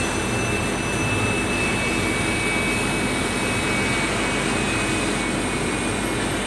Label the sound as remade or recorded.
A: recorded